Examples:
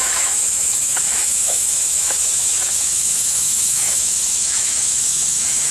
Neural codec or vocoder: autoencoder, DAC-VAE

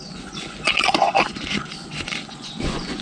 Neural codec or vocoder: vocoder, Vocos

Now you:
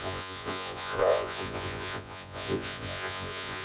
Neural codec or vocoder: vocoder, Vocos